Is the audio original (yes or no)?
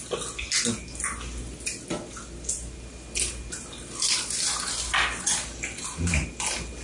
yes